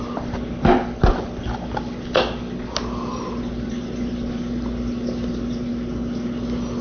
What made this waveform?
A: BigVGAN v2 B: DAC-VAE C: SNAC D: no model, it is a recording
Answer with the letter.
D